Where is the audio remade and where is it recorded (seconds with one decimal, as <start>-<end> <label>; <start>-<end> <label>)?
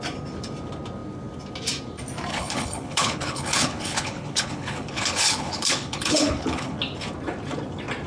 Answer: 0.0-2.3 recorded; 2.3-6.8 remade; 6.8-8.1 recorded